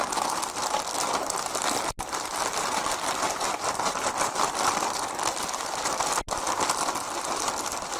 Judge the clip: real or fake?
real